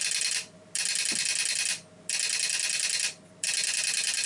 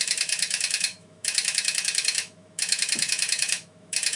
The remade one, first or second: second